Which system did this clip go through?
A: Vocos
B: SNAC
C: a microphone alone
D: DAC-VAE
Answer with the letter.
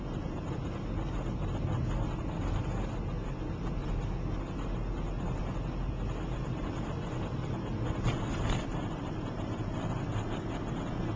C